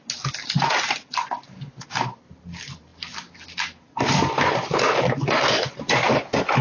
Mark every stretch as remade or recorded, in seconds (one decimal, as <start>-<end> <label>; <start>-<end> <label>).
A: 0.0-6.6 recorded